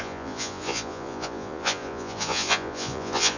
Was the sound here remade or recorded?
remade